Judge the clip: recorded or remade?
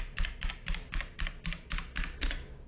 recorded